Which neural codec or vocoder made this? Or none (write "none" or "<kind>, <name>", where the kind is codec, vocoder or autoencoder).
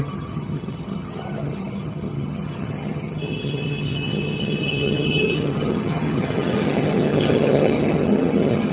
vocoder, HiFi-GAN